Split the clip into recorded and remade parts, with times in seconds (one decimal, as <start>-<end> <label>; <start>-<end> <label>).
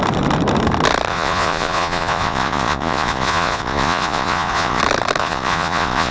0.0-1.1 recorded; 1.1-4.8 remade; 4.8-5.2 recorded; 5.2-6.1 remade